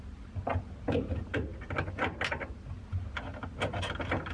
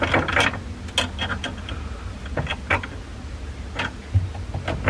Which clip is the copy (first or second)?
first